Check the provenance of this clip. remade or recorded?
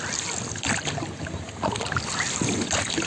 recorded